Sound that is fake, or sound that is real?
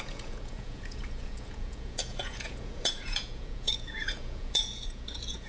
fake